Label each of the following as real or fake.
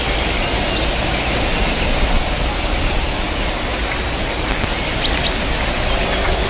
real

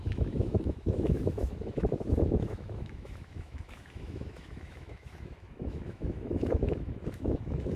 fake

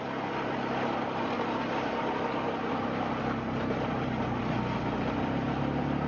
real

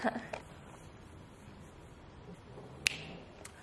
real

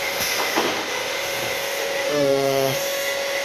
fake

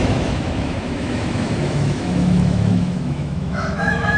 fake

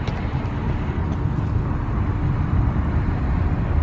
real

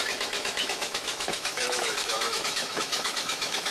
fake